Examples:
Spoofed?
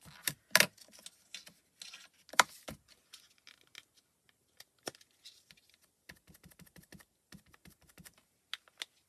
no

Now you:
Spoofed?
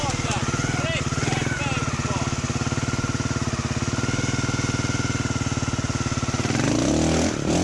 no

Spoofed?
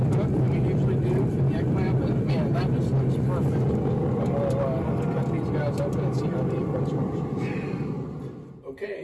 no